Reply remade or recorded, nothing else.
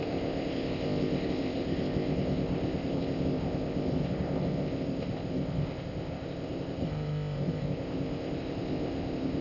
remade